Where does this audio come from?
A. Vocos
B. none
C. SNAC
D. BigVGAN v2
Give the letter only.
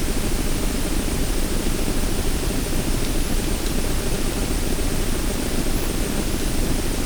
B